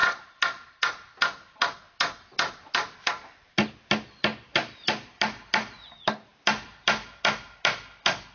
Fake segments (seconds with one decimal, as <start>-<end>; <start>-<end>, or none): none